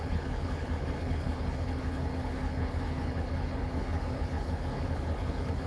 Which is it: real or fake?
fake